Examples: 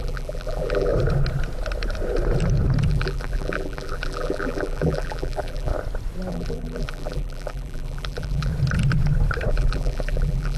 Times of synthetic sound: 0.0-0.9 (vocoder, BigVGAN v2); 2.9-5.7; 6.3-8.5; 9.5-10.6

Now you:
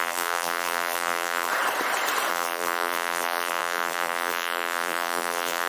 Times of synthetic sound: 0.0-1.5 (vocoder, BigVGAN v2); 2.3-5.7